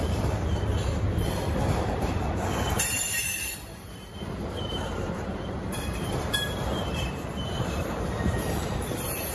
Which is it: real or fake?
fake